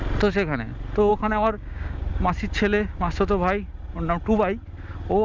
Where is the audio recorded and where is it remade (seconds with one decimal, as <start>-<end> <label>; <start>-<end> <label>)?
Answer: 0.0-1.1 recorded; 1.1-2.0 remade; 2.0-5.2 recorded